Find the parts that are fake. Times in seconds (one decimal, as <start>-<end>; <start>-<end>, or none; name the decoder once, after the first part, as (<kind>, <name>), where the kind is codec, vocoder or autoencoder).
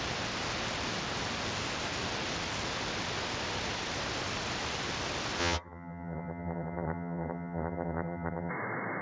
5.4-8.5 (vocoder, HiFi-GAN)